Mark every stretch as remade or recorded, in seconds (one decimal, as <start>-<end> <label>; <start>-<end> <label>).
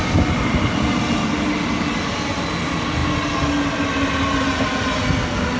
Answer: 0.0-5.6 recorded